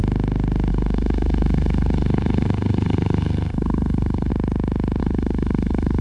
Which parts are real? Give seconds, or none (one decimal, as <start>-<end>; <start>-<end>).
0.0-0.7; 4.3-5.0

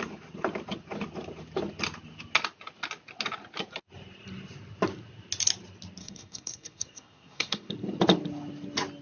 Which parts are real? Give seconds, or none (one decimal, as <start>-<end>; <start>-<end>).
0.0-6.0; 7.7-9.0

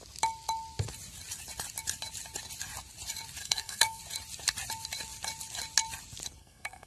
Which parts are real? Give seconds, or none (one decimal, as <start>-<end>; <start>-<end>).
0.0-3.4; 4.0-6.4